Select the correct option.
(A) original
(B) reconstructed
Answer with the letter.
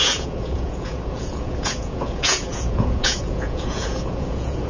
B